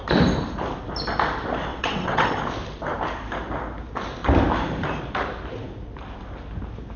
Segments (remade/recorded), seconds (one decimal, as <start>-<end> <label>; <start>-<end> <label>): 0.0-1.7 recorded; 1.7-2.4 remade; 2.4-7.0 recorded